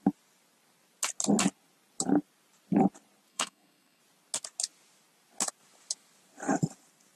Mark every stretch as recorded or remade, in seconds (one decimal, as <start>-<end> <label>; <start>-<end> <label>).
0.0-3.3 recorded; 3.3-4.0 remade; 4.0-7.2 recorded